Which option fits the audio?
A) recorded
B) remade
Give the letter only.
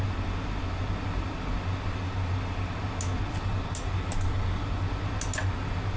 A